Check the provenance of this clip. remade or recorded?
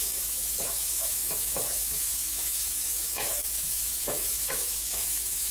remade